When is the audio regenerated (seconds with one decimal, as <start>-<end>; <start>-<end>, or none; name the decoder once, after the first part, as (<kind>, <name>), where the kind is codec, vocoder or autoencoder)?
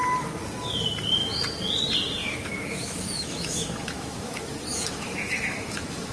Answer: 2.2-6.1 (autoencoder, DAC-VAE)